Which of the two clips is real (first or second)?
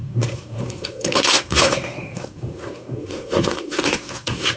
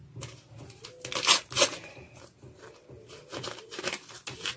second